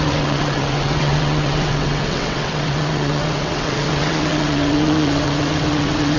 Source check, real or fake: fake